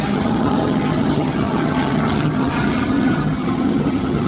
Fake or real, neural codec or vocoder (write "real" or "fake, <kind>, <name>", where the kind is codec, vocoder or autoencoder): fake, vocoder, HiFi-GAN